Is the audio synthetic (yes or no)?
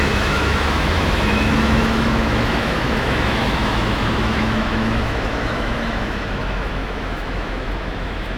yes